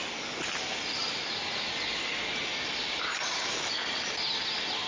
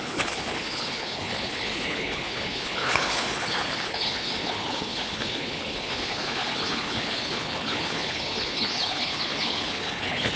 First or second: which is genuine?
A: first